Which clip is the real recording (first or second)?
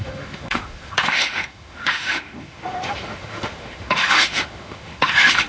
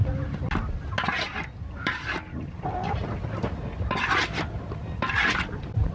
second